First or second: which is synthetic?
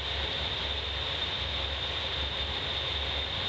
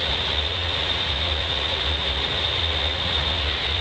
second